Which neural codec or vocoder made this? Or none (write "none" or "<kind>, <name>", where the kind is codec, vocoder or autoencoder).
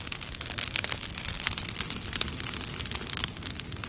none